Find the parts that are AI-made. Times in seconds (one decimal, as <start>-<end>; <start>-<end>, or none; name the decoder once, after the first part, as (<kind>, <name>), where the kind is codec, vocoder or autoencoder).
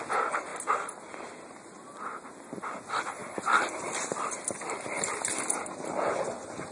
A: 0.5-2.0 (vocoder, BigVGAN v2); 3.2-5.4